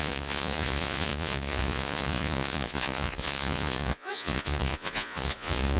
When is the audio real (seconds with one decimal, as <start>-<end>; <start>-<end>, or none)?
none